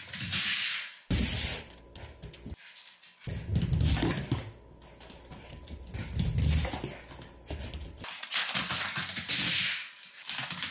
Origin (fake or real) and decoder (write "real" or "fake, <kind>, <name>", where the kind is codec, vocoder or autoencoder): real